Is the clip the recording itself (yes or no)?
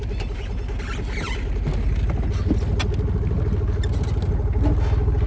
yes